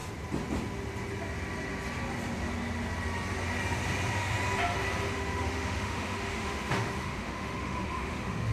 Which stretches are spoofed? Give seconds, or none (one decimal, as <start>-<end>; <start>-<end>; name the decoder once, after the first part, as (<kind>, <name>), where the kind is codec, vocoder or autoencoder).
5.1-8.5 (autoencoder, DAC-VAE)